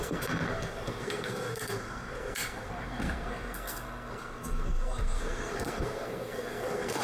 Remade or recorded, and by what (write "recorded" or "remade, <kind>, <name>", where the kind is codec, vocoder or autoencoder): remade, codec, SNAC